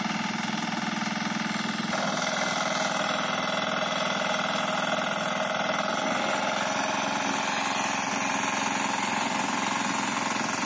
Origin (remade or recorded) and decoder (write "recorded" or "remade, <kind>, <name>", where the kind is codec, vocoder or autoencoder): recorded